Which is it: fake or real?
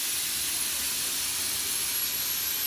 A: real